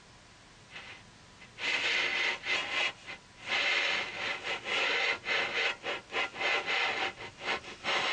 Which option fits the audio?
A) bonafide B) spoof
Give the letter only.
A